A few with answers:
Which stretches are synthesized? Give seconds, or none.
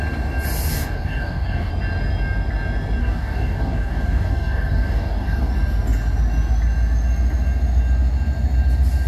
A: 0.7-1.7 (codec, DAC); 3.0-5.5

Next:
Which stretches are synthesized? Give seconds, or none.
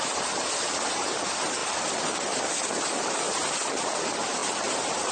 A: 1.6-2.3 (vocoder, BigVGAN v2); 4.4-5.1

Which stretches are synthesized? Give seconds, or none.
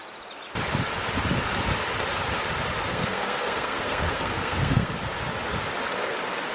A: 2.9-4.9 (codec, SNAC)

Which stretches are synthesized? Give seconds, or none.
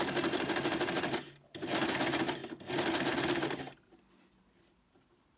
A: none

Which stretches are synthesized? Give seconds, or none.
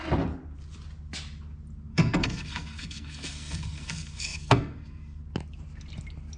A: 1.9-5.2 (codec, SNAC)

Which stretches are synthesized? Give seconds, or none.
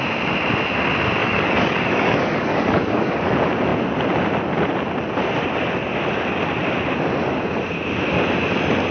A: 1.2-3.3 (codec, DAC)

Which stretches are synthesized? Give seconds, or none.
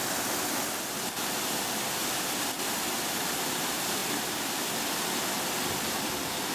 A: none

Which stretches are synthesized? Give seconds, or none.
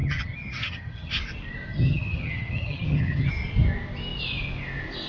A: 0.0-1.1 (vocoder, HiFi-GAN); 1.7-3.3